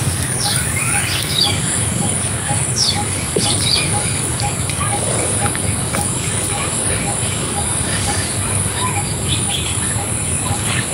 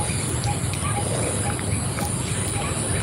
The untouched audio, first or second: second